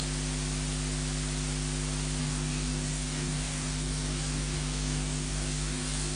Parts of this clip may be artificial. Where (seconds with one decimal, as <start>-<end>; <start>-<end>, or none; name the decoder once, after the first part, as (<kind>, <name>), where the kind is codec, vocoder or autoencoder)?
2.2-6.2 (codec, DAC)